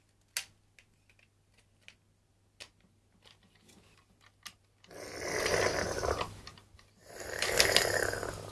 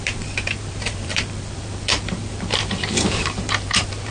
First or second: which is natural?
first